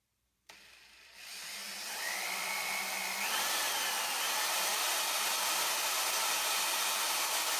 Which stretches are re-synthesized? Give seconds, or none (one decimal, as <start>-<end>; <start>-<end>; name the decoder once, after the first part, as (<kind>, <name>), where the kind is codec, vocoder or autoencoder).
0.0-7.6 (vocoder, BigVGAN v2)